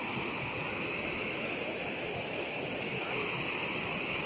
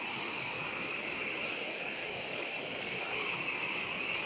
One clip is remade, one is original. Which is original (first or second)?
first